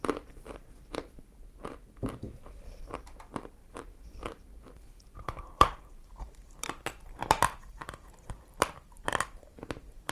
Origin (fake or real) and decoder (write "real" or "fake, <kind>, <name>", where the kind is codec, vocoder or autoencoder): fake, vocoder, BigVGAN v2